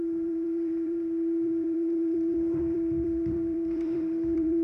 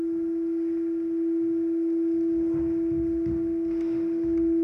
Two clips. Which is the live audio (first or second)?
second